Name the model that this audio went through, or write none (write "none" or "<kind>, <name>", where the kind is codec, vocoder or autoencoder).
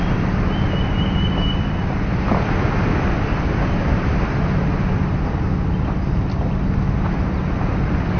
none